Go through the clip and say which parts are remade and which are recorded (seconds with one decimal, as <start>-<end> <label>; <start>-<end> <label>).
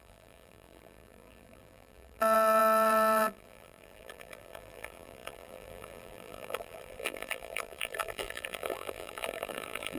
0.0-10.0 remade